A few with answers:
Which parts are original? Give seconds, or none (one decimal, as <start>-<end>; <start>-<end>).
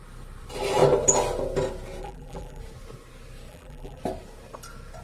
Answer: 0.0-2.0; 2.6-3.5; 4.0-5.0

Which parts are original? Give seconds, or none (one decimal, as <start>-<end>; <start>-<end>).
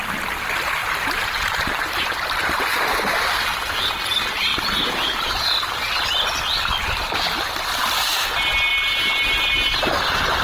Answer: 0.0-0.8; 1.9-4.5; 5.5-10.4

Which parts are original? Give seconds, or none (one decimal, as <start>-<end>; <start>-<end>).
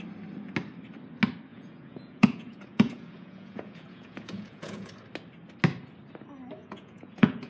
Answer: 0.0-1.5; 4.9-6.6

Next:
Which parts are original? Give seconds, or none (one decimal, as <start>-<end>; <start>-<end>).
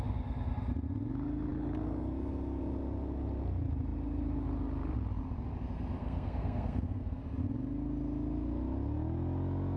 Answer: 0.0-6.0; 7.2-9.8